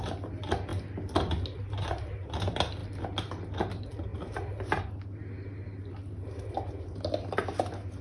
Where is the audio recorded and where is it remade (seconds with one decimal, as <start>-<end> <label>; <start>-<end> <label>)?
0.0-8.0 recorded